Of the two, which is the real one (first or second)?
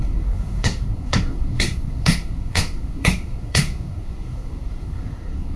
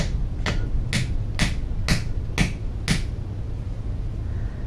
second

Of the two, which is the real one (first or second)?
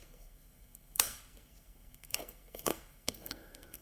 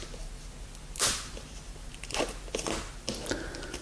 second